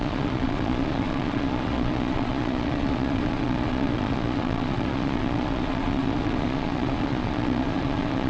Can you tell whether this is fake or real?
fake